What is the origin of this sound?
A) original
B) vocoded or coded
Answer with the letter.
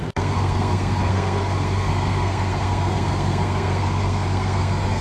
B